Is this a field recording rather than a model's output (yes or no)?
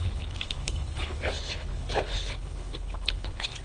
no